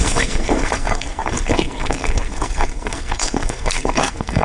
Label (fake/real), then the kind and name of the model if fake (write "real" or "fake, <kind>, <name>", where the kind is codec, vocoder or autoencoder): fake, codec, SNAC